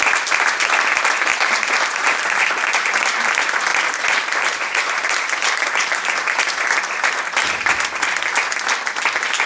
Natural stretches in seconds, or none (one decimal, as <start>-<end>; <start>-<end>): 0.0-1.3; 2.9-3.7; 6.1-9.5